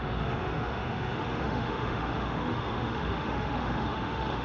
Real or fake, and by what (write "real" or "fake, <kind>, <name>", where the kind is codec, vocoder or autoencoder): fake, autoencoder, DAC-VAE